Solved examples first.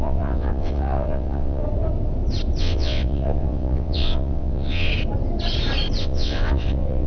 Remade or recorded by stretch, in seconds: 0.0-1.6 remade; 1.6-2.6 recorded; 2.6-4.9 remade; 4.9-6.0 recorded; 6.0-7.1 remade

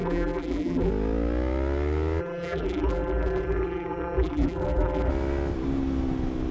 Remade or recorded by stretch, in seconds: 0.0-0.9 remade; 0.9-2.2 recorded; 2.2-5.1 remade; 5.1-6.5 recorded

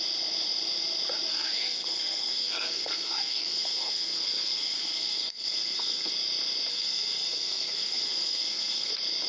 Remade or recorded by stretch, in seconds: 0.0-1.3 recorded; 1.3-6.1 remade; 6.1-6.7 recorded; 6.7-8.9 remade; 8.9-9.3 recorded

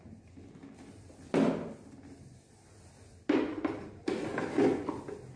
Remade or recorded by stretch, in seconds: 0.0-5.4 recorded

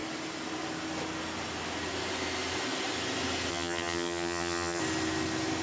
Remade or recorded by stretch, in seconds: 0.0-3.5 recorded; 3.5-4.8 remade; 4.8-5.6 recorded